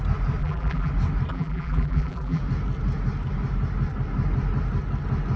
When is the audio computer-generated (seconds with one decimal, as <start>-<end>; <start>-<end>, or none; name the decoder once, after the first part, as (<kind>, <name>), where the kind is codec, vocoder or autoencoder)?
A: 0.4-0.9 (vocoder, BigVGAN v2); 1.3-2.4